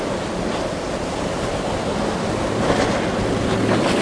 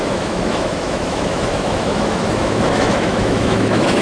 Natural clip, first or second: first